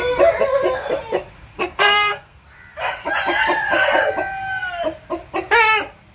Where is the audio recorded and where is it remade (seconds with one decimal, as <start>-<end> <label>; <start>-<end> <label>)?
0.0-1.6 recorded; 1.6-2.4 remade; 2.4-6.1 recorded